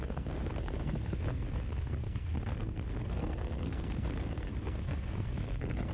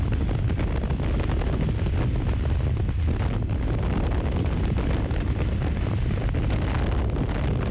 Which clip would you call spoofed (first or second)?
first